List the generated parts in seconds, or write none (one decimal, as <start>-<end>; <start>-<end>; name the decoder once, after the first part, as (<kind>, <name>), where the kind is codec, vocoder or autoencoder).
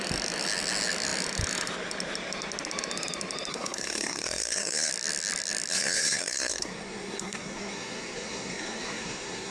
3.5-4.9 (codec, SNAC); 5.7-9.5